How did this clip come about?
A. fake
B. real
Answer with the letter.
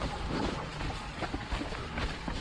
B